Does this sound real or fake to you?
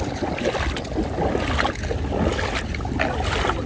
real